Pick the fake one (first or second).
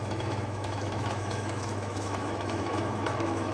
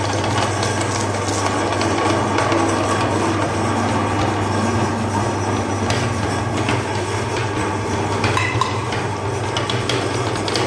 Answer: first